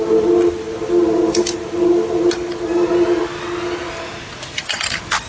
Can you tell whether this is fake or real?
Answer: real